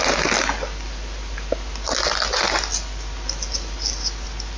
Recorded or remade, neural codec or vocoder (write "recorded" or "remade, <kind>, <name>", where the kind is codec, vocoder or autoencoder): recorded